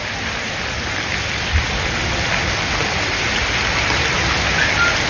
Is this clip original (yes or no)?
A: yes